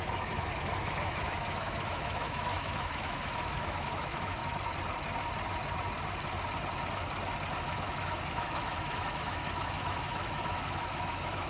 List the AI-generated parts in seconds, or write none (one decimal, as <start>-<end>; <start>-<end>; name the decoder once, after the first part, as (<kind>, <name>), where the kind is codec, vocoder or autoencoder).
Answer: 0.0-4.4 (autoencoder, DAC-VAE); 7.6-11.5